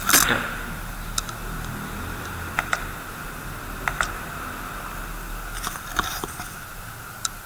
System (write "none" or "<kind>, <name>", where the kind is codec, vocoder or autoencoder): none